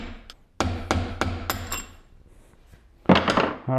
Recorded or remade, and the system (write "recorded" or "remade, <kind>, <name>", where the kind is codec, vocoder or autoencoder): recorded